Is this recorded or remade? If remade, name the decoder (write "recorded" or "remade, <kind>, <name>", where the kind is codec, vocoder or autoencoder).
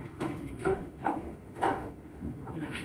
remade, autoencoder, DAC-VAE